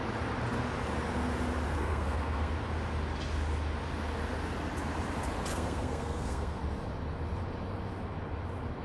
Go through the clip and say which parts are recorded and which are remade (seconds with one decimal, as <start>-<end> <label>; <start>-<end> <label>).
0.0-1.8 recorded; 1.8-2.5 remade; 2.5-5.5 recorded; 5.5-6.6 remade; 6.6-8.8 recorded